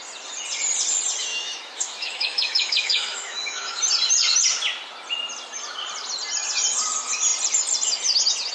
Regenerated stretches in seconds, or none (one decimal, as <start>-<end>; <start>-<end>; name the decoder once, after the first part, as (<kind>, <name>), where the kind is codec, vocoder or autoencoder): 1.3-3.8 (autoencoder, DAC-VAE)